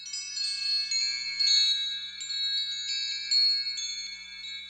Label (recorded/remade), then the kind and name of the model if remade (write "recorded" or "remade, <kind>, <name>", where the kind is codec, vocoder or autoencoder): recorded